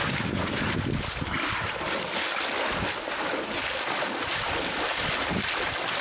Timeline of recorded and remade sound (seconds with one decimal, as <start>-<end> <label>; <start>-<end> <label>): 0.0-0.6 remade; 0.6-6.0 recorded